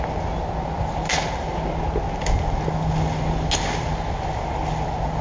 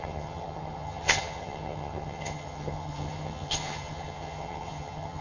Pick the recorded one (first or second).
first